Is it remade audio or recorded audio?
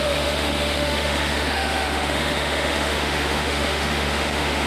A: remade